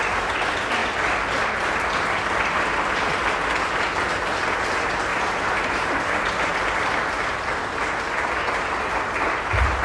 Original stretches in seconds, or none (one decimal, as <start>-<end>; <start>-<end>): 0.0-5.1; 6.1-9.8